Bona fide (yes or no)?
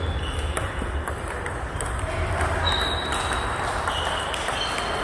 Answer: yes